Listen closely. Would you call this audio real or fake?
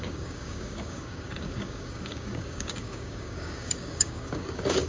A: fake